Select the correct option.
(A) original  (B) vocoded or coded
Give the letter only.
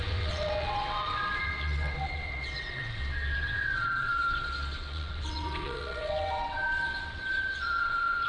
B